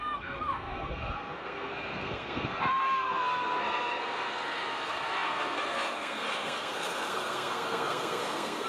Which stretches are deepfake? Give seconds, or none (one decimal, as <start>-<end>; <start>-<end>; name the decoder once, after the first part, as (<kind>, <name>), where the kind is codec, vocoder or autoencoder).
0.0-8.7 (codec, SNAC)